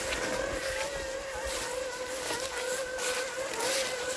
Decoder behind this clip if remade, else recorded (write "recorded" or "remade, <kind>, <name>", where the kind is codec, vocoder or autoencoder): recorded